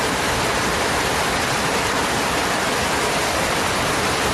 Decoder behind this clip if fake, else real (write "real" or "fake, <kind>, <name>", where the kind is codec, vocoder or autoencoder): real